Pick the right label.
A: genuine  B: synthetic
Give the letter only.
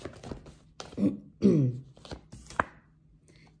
A